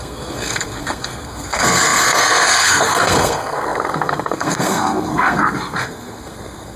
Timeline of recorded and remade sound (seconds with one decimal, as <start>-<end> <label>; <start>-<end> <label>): 0.0-6.8 remade